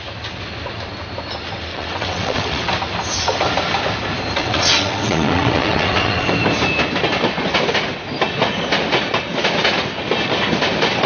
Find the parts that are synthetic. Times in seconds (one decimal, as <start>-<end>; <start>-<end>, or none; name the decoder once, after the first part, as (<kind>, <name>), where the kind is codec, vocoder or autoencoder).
1.7-2.7 (vocoder, WaveNeXt); 4.4-6.3